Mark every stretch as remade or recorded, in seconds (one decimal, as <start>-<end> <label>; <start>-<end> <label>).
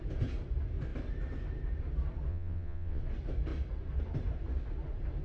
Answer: 0.0-2.3 recorded; 2.3-3.0 remade; 3.0-5.2 recorded